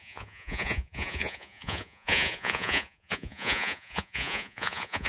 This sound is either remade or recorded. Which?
remade